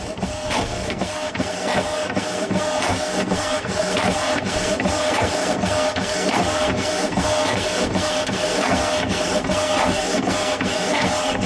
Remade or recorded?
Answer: remade